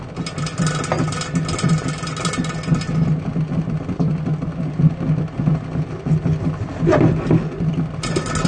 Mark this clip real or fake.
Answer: real